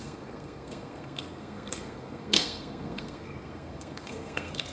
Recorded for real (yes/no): no